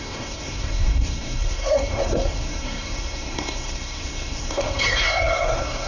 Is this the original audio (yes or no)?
no